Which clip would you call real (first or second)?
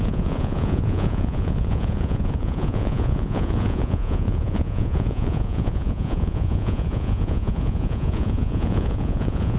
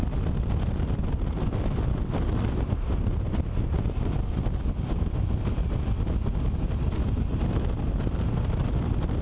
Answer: second